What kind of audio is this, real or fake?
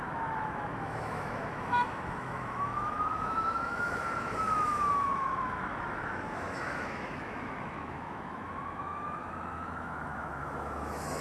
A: fake